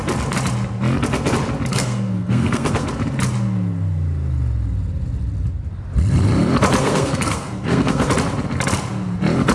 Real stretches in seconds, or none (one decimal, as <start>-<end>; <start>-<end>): 0.0-1.7; 2.9-6.8; 8.1-9.5